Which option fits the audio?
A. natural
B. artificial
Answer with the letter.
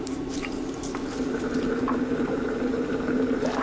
B